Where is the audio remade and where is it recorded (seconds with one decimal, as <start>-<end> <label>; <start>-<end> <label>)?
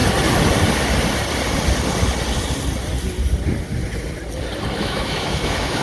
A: 0.0-4.8 recorded; 4.8-5.8 remade